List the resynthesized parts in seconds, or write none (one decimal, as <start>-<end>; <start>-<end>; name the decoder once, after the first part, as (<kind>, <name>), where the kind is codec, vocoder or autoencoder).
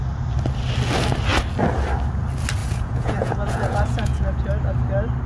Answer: 2.6-4.5 (vocoder, Vocos)